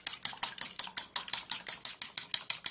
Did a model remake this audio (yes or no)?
no